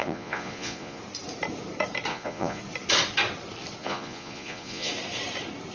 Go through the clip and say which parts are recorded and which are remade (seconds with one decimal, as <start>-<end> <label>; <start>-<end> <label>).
0.0-1.0 remade; 1.0-2.1 recorded; 2.1-2.6 remade; 2.6-3.8 recorded; 3.8-4.9 remade; 4.9-5.7 recorded